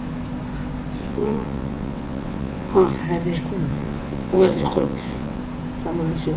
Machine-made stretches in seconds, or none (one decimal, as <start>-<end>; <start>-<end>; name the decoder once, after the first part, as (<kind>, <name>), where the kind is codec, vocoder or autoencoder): 1.0-3.0 (vocoder, WaveNeXt); 3.7-5.4